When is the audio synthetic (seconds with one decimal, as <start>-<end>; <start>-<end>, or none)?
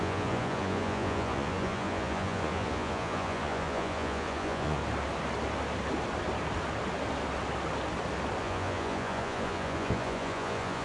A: 0.0-4.8; 8.4-10.8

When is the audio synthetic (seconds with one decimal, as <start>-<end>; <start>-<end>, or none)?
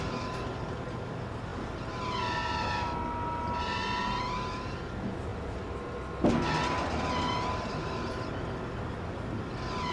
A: none